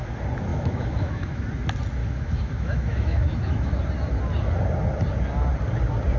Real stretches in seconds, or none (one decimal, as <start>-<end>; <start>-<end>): 0.0-0.5; 1.4-2.0; 3.7-6.2